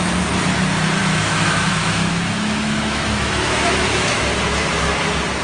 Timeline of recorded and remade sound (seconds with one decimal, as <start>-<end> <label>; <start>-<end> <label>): 0.0-1.0 recorded; 1.0-4.2 remade; 4.2-5.4 recorded